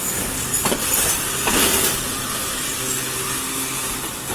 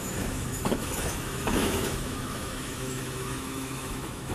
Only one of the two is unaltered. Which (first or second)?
first